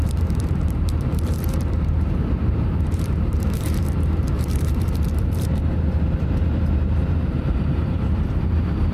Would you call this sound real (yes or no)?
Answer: no